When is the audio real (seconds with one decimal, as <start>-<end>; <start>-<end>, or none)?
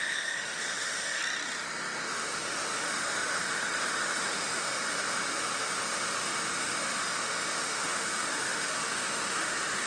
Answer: 1.2-2.0